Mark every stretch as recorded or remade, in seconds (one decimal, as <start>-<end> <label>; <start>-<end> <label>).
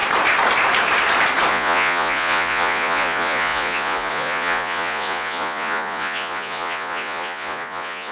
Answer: 0.0-1.5 recorded; 1.5-8.1 remade